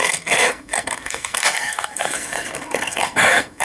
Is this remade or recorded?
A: remade